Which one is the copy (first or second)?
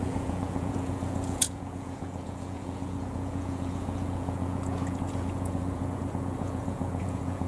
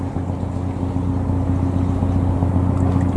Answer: first